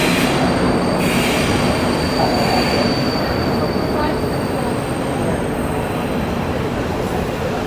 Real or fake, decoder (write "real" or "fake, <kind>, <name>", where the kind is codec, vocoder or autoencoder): real